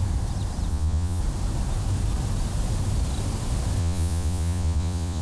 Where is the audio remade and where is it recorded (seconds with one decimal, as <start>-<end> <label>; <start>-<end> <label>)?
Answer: 0.0-0.7 recorded; 0.7-1.2 remade; 1.2-3.8 recorded; 3.8-5.2 remade